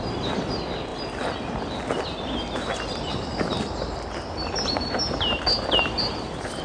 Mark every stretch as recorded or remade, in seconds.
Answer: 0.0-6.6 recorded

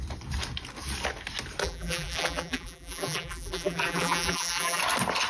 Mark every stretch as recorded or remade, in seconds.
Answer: 0.0-1.6 recorded; 1.6-4.8 remade; 4.8-5.3 recorded

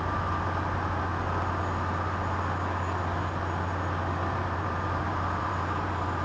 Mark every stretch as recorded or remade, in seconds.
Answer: 0.0-1.1 remade; 1.1-4.3 recorded; 4.3-6.2 remade

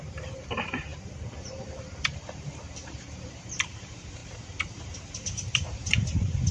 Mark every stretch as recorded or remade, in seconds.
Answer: 0.0-6.5 remade

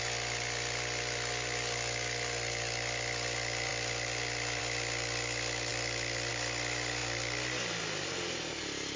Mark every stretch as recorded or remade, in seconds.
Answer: 0.0-9.0 recorded

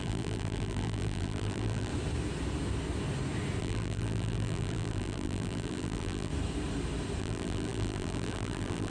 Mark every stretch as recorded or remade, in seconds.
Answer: 0.0-1.9 remade; 1.9-3.6 recorded; 3.6-6.3 remade; 6.3-7.2 recorded; 7.2-8.9 remade

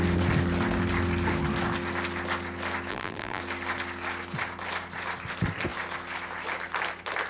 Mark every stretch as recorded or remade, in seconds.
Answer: 0.0-2.9 recorded; 2.9-3.4 remade; 3.4-7.3 recorded